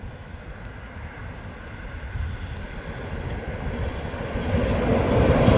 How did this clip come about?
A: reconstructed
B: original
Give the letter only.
B